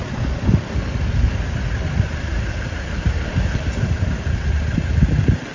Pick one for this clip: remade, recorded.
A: remade